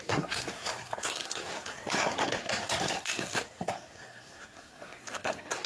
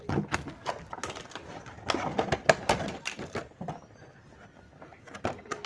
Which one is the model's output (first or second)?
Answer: first